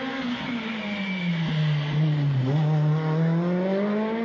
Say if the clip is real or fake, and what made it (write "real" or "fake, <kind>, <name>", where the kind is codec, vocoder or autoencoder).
real